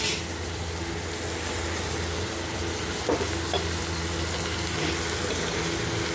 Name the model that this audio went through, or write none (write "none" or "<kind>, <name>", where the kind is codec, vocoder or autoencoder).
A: none